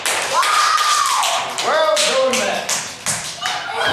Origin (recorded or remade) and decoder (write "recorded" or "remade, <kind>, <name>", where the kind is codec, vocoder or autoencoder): recorded